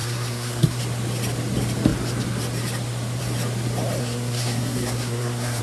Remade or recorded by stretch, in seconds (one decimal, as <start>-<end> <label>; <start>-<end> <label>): 0.0-0.8 remade; 0.8-4.0 recorded; 4.0-5.6 remade